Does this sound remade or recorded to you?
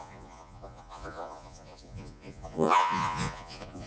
remade